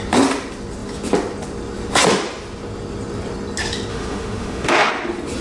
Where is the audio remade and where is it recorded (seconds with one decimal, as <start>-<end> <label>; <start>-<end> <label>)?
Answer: 0.0-3.9 recorded; 3.9-4.9 remade; 4.9-5.4 recorded